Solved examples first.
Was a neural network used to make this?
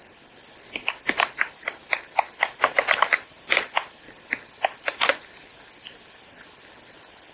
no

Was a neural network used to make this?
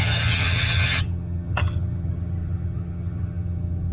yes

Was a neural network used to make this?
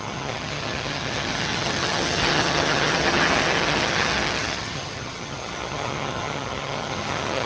yes